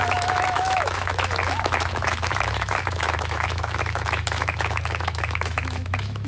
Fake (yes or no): yes